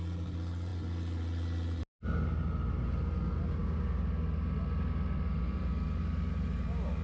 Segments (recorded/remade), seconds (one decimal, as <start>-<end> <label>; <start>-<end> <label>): 0.0-7.0 recorded